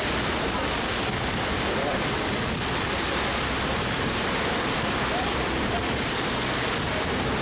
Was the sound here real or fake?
fake